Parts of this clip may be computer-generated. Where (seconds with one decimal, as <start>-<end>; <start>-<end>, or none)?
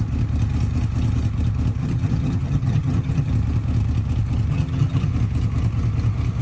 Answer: 1.8-3.3; 4.5-5.1